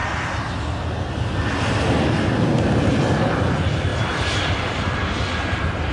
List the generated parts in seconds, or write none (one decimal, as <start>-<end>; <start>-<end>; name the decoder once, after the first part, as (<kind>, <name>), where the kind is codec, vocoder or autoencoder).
3.9-5.9 (vocoder, BigVGAN v2)